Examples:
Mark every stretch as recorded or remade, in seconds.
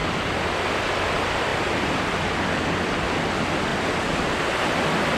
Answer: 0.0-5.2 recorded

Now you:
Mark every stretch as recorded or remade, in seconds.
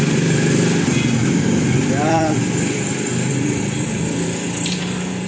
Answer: 0.0-1.2 recorded; 1.2-4.0 remade; 4.0-5.3 recorded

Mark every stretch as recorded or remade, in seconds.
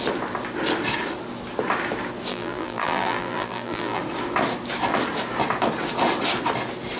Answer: 0.0-2.3 recorded; 2.3-4.0 remade; 4.0-7.0 recorded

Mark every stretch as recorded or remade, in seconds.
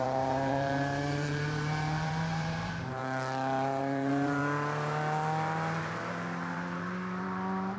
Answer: 0.0-3.0 remade; 3.0-3.8 recorded; 3.8-4.4 remade; 4.4-5.8 recorded; 5.8-7.8 remade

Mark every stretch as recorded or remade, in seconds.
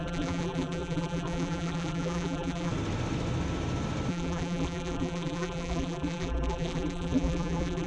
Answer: 0.0-2.7 remade; 2.7-4.1 recorded; 4.1-7.9 remade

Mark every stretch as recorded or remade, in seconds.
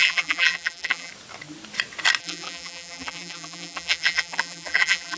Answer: 0.0-1.1 remade; 1.1-2.2 recorded; 2.2-5.2 remade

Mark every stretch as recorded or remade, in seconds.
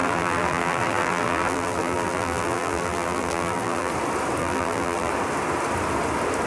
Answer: 0.0-3.9 remade; 3.9-4.4 recorded; 4.4-5.1 remade; 5.1-6.5 recorded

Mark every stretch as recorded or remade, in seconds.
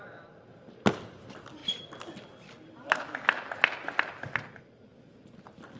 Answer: 0.0-5.8 recorded